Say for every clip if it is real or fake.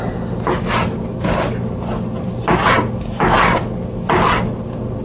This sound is real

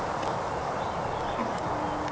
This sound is real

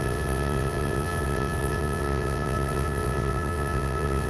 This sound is fake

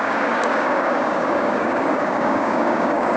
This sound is fake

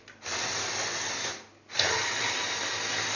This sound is real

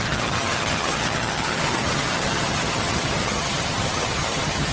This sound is fake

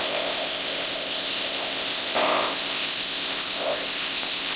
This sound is fake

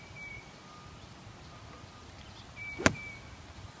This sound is real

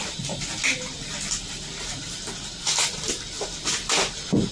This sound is real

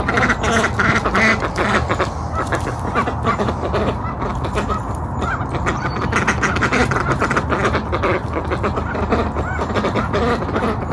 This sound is real